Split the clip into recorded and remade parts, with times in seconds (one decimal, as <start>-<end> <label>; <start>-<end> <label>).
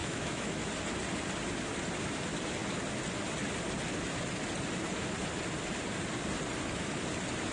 0.0-0.7 remade; 0.7-7.5 recorded